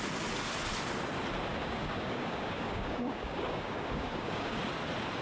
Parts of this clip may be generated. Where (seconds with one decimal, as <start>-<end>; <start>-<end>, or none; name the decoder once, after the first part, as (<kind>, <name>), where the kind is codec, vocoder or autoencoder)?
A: 1.5-4.6 (codec, DAC)